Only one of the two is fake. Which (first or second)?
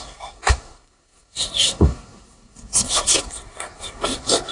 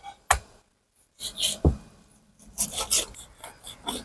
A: first